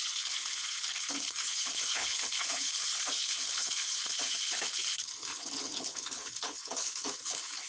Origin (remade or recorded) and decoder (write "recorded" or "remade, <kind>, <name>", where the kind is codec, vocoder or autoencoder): remade, codec, HILCodec